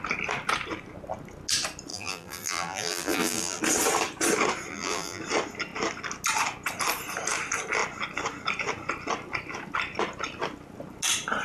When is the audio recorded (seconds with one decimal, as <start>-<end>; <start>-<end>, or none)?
0.0-1.9; 3.6-4.7; 5.2-11.4